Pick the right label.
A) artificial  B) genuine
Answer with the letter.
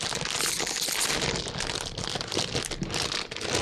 B